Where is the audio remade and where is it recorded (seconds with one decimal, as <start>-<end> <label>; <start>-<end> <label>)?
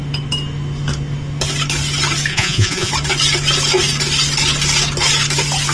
0.0-2.3 recorded; 2.3-2.9 remade; 2.9-5.7 recorded